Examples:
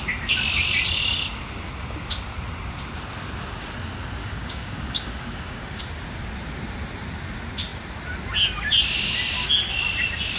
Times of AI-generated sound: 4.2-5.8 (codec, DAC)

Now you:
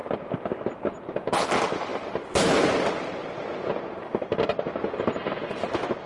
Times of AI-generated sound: none

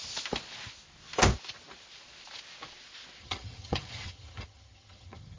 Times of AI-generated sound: 3.2-5.4 (vocoder, HiFi-GAN)

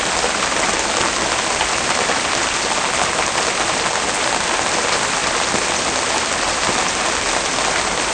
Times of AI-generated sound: none

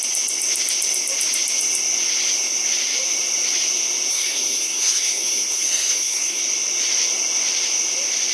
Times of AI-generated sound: 4.1-6.4 (codec, SNAC)

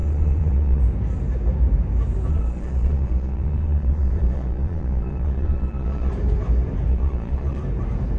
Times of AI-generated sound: 0.0-0.8 (vocoder, Vocos); 2.3-6.1; 6.9-7.6